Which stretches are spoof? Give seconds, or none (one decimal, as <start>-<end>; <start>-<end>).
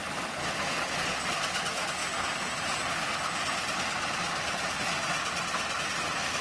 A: none